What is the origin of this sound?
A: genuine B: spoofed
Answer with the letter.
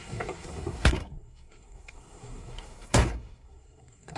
B